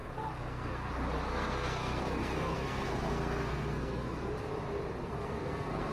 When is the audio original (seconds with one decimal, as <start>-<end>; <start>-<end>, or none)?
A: 0.9-1.3; 4.3-5.0